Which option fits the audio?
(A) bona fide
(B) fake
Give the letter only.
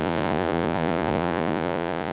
B